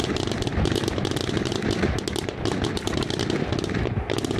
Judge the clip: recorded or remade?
recorded